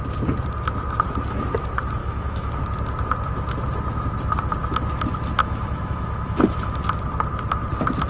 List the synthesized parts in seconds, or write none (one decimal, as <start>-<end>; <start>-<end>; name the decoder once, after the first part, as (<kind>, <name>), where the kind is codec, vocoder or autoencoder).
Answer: 2.0-2.6 (autoencoder, DAC-VAE); 5.4-6.8